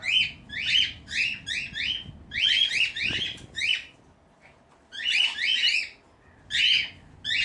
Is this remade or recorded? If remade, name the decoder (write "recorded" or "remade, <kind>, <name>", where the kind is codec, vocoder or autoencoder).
recorded